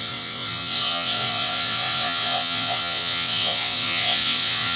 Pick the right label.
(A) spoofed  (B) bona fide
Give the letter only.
A